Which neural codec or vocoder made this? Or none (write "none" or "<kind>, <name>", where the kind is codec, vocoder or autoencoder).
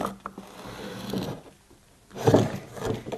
none